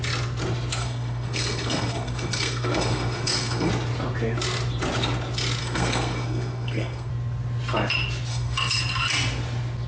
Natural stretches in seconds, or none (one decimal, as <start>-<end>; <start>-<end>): 0.0-0.8; 3.7-5.6; 7.1-8.3; 8.8-9.9